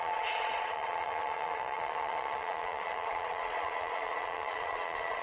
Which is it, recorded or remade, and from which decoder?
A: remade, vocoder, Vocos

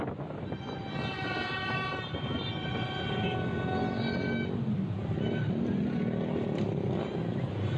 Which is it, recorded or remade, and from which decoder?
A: recorded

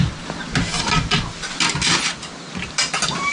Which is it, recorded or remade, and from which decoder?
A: recorded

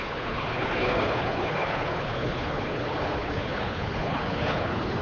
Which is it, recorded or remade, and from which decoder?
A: remade, codec, HILCodec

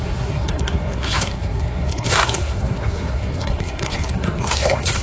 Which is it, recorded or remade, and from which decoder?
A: remade, codec, SNAC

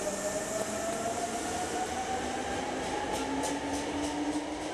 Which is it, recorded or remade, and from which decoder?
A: recorded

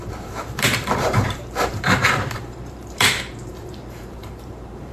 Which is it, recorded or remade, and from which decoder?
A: remade, vocoder, BigVGAN v2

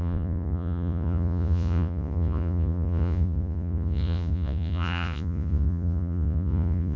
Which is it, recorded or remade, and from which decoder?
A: remade, vocoder, Vocos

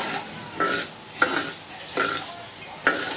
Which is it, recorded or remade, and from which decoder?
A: recorded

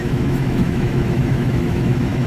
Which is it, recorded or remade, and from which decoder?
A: remade, autoencoder, DAC-VAE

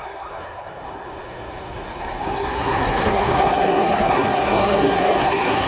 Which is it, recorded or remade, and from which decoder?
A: remade, codec, SNAC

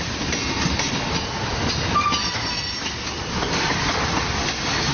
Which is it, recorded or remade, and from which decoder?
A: recorded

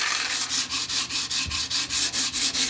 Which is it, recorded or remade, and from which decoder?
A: recorded